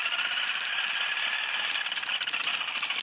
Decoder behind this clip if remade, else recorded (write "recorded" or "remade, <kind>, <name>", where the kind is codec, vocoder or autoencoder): remade, vocoder, BigVGAN v2